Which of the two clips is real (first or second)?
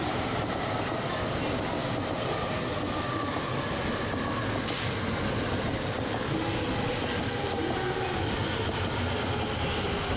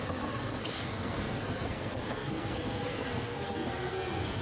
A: first